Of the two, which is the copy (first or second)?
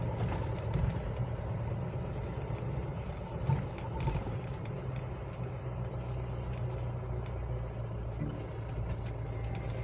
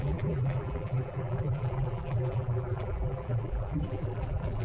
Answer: second